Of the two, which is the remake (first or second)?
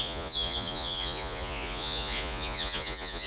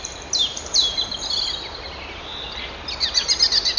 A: first